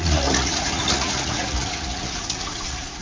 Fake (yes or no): yes